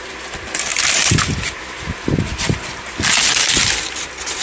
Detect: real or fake real